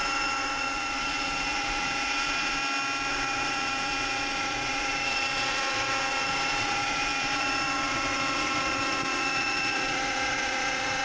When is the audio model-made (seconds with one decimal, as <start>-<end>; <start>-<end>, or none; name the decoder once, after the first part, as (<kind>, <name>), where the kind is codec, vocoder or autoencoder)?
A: 0.0-2.6 (vocoder, Vocos); 3.1-11.0